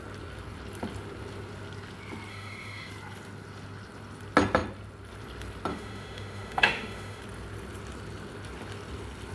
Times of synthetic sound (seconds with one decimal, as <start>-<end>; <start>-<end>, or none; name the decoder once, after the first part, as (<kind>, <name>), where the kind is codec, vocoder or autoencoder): 2.3-2.9 (autoencoder, DAC-VAE); 5.7-7.2